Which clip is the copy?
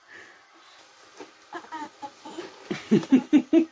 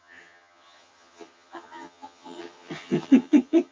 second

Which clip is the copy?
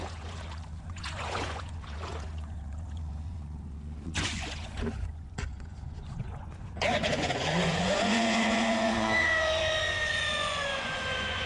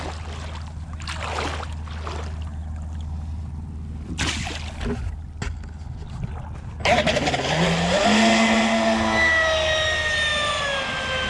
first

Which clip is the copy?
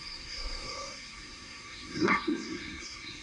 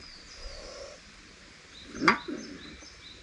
first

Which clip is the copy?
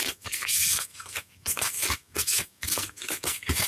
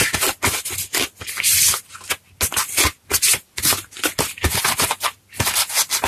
first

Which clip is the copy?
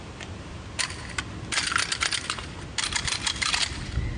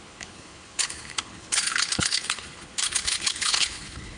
second